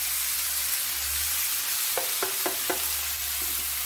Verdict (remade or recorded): recorded